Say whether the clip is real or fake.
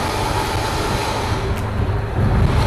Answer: real